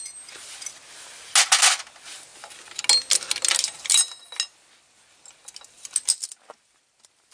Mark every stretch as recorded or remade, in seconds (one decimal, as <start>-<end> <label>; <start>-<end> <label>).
0.0-7.3 recorded